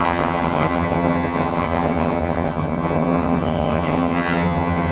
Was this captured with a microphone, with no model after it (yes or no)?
no